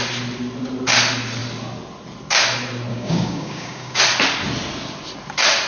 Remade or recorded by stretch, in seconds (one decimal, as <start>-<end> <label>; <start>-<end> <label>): 0.0-2.9 recorded; 2.9-4.0 remade; 4.0-5.7 recorded